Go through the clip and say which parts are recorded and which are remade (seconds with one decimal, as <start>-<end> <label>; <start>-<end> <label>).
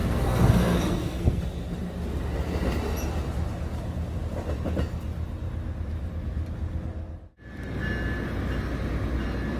0.0-1.4 remade; 1.4-9.6 recorded